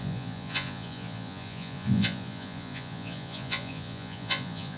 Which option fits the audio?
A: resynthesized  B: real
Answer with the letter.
A